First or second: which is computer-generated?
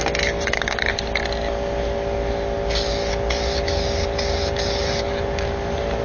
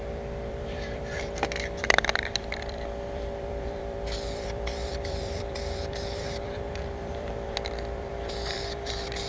second